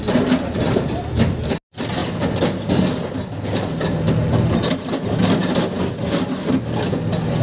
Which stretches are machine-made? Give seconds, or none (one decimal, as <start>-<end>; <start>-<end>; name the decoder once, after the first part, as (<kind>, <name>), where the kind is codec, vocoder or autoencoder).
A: none